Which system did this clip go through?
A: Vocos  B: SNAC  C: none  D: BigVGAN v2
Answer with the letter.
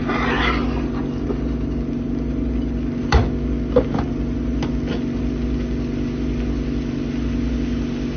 C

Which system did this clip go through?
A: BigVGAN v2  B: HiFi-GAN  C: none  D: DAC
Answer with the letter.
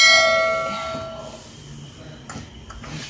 C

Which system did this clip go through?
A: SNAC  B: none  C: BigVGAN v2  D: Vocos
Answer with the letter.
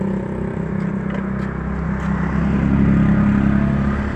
B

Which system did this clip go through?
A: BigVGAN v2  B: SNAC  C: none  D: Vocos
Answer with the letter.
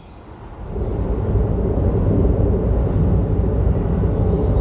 C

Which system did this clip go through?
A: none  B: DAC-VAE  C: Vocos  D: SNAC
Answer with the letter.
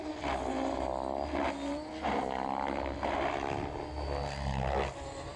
A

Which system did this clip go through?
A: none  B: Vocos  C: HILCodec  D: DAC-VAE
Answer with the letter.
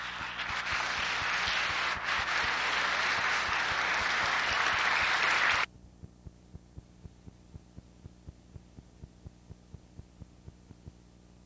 A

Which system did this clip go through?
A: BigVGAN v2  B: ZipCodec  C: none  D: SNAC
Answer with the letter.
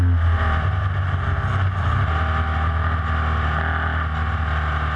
C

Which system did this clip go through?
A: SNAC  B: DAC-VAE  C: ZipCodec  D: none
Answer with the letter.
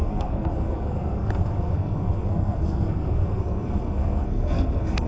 A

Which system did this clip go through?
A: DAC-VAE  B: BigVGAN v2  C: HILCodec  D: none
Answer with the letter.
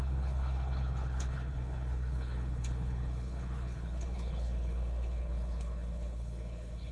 C